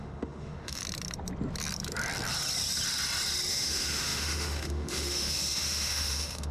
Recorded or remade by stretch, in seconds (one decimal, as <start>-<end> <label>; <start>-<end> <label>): 0.0-0.8 remade; 0.8-3.5 recorded; 3.5-6.5 remade